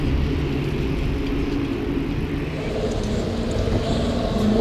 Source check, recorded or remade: recorded